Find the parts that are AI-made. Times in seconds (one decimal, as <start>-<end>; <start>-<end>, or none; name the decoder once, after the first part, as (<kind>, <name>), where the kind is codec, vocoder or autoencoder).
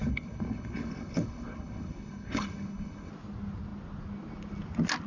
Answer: 0.0-3.1 (codec, HILCodec)